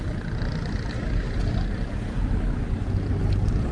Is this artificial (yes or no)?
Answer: no